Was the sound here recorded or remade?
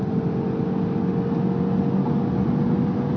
recorded